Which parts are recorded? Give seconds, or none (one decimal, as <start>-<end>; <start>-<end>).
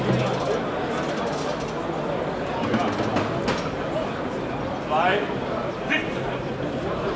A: 0.0-5.1